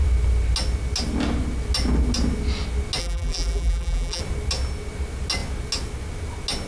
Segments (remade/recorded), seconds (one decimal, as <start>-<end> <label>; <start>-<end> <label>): 0.0-3.0 recorded; 3.0-4.2 remade; 4.2-6.7 recorded